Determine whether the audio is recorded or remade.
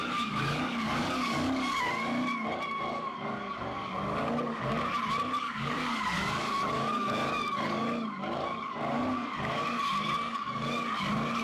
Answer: remade